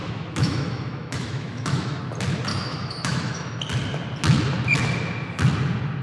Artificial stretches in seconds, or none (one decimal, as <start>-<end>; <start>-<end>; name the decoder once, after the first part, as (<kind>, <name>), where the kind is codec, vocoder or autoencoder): 0.0-2.0 (autoencoder, DAC-VAE); 2.5-3.5